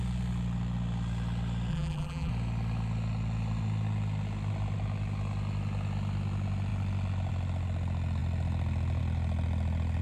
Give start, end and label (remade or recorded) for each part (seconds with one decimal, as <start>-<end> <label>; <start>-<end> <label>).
0.0-1.7 recorded; 1.7-2.3 remade; 2.3-10.0 recorded